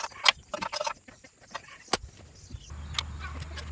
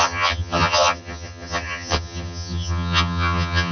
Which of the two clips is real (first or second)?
first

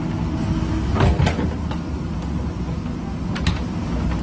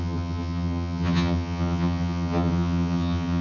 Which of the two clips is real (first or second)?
first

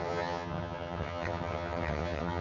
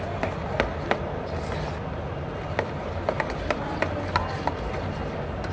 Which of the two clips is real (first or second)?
second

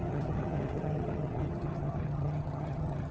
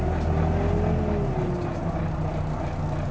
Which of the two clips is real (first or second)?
second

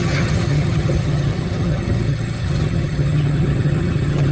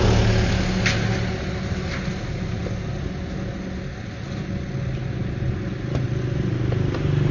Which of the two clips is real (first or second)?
second